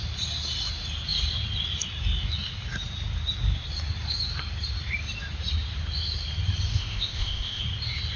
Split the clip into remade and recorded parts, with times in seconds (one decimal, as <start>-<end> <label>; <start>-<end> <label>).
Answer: 0.0-6.7 recorded; 6.7-7.6 remade; 7.6-8.2 recorded